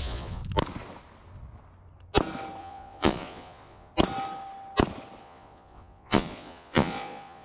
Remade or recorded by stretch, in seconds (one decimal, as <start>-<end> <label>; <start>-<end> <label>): 0.0-0.4 remade; 0.4-2.6 recorded; 2.6-3.9 remade; 3.9-5.2 recorded; 5.2-7.4 remade